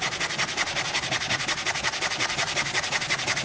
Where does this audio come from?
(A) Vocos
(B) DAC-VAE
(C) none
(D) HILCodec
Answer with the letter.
C